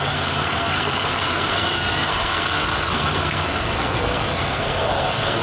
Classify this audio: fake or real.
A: fake